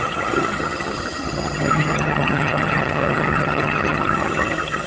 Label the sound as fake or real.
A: fake